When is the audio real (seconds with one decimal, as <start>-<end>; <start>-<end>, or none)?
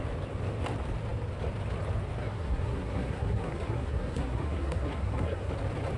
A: 0.0-2.2; 5.5-6.0